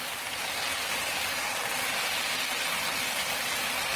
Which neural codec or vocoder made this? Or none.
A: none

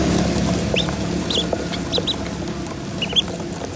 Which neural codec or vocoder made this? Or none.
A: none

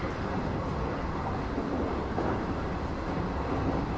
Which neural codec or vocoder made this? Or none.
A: none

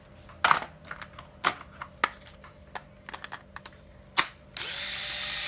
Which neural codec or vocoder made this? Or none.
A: none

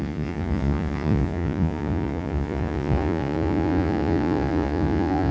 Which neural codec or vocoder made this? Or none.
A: vocoder, Vocos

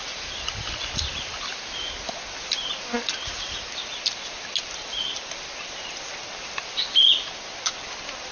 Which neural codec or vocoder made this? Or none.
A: none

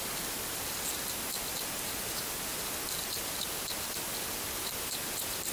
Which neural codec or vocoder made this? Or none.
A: none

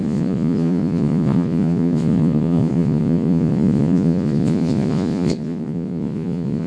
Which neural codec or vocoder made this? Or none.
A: vocoder, Vocos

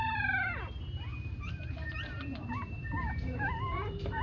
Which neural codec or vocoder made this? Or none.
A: vocoder, BigVGAN v2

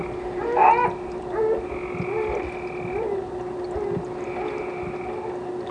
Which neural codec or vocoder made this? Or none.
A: none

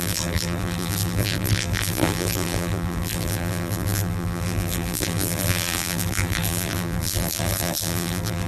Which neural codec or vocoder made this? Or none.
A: vocoder, BigVGAN v2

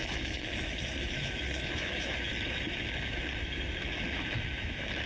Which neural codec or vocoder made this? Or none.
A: autoencoder, DAC-VAE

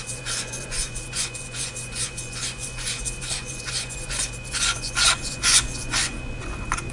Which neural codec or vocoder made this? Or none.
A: vocoder, Vocos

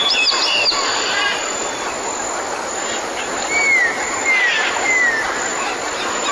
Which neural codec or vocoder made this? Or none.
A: none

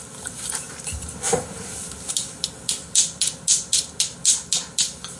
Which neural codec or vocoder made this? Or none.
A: none